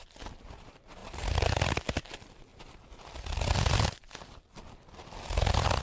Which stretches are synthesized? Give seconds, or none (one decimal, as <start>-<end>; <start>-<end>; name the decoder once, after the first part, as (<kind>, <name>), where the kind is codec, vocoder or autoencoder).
2.5-5.8 (vocoder, BigVGAN v2)